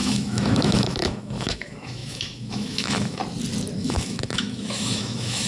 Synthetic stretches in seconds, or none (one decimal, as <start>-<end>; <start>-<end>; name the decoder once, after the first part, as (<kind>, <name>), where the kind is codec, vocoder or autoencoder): 0.0-3.2 (autoencoder, DAC-VAE); 3.8-5.5